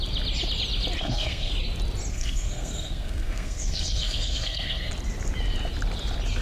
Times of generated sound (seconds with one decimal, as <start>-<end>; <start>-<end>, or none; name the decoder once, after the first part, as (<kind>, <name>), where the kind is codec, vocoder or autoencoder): 1.0-1.5 (codec, SNAC); 2.1-4.9

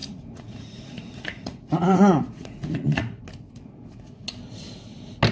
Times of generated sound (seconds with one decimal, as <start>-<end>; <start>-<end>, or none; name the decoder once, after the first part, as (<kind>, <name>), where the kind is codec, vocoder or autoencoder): 0.0-3.2 (vocoder, Vocos)